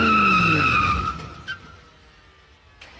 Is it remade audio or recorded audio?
recorded